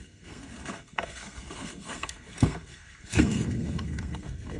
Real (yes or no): no